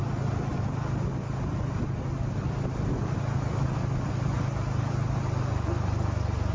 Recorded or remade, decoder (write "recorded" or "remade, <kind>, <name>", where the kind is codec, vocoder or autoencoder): recorded